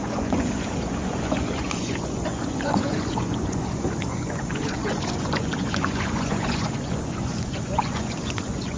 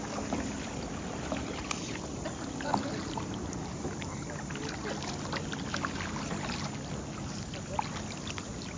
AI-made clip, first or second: first